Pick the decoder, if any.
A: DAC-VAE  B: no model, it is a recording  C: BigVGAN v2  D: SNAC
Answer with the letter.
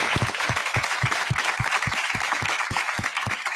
A